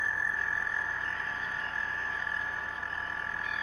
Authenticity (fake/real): fake